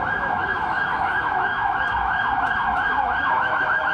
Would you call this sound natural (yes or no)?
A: no